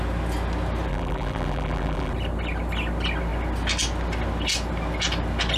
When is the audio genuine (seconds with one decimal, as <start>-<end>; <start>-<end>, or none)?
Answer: 0.0-0.9; 2.1-5.6